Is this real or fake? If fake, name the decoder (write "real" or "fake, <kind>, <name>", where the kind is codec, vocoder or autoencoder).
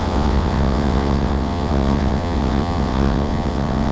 fake, vocoder, WaveNeXt